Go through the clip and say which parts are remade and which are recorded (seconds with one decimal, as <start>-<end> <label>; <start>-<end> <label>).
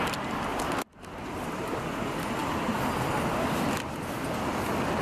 0.0-5.0 recorded